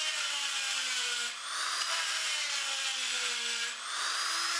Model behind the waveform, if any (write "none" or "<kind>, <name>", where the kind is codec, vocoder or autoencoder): vocoder, BigVGAN v2